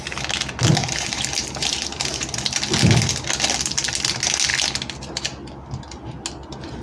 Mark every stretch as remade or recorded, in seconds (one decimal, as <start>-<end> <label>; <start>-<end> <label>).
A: 0.0-0.8 recorded; 0.8-2.2 remade; 2.2-6.8 recorded